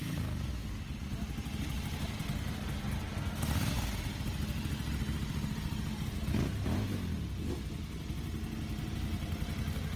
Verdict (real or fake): real